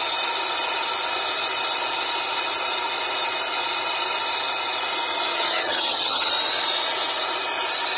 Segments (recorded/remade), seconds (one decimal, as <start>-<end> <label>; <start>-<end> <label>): 0.0-5.3 recorded; 5.3-6.3 remade; 6.3-8.0 recorded